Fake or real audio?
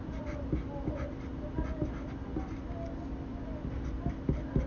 real